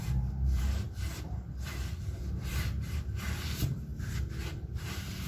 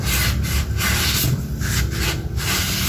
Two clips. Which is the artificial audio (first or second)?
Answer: first